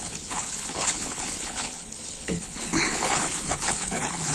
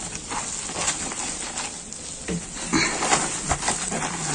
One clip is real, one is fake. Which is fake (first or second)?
first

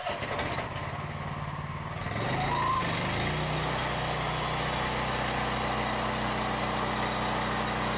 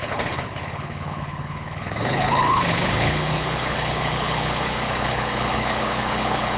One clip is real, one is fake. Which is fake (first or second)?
second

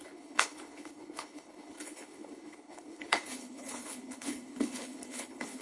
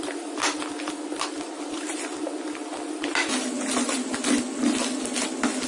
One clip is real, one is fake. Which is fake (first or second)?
first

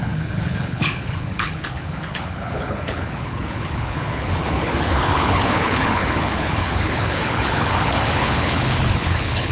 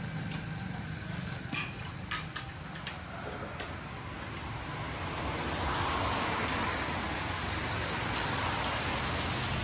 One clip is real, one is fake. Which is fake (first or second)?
first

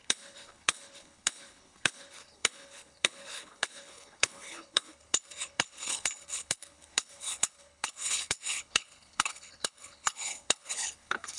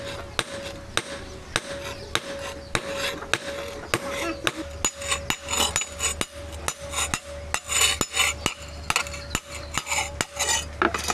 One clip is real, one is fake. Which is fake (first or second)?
first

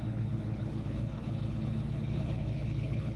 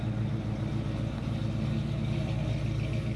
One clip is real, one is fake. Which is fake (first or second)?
first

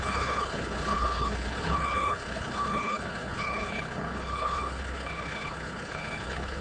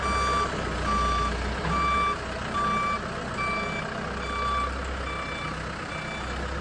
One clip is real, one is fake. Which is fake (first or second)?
first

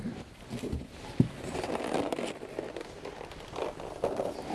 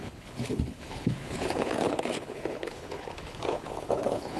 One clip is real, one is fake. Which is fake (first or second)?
second